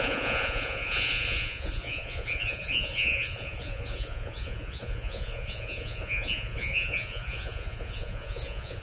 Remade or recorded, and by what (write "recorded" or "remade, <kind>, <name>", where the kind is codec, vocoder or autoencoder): remade, vocoder, Vocos